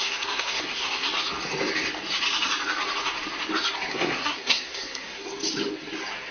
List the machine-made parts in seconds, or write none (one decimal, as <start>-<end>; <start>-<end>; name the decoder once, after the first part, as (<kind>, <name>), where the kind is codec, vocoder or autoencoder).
0.0-1.1 (codec, SNAC); 3.9-5.3